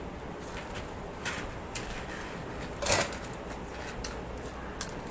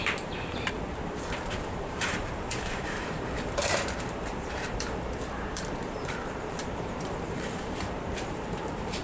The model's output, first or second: second